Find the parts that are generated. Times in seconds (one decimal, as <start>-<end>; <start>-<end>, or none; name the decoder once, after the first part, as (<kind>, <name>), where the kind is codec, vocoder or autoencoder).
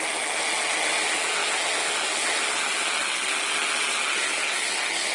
none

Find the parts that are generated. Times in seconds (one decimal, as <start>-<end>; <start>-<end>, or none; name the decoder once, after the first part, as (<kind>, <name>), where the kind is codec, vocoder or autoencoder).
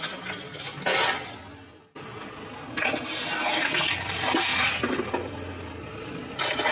none